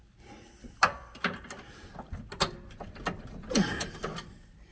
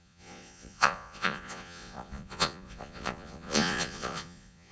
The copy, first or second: second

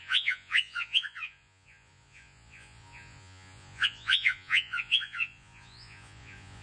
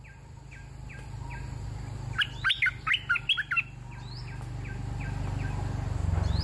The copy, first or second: first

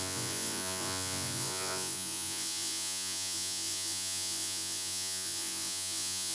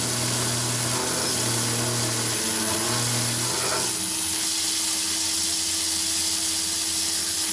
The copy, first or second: first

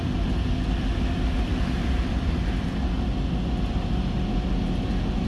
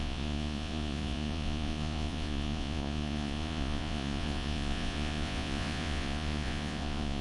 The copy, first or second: second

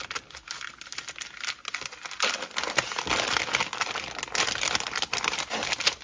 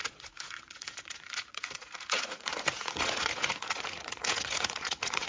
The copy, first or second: second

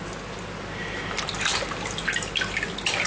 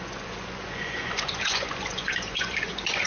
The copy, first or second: second